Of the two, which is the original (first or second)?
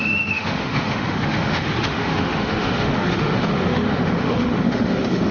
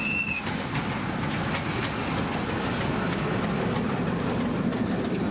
second